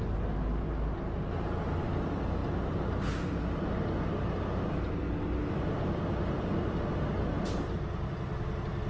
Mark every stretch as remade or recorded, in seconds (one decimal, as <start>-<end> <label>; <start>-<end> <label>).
0.0-8.9 recorded